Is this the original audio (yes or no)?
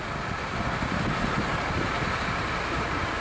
yes